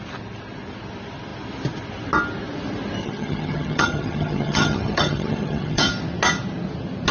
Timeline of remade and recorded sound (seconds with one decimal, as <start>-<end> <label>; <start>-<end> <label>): 0.0-3.0 recorded; 3.0-5.9 remade; 5.9-7.1 recorded